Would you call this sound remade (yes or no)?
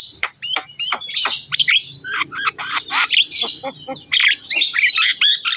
yes